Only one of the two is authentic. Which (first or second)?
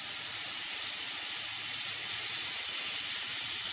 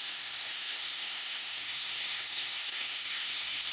first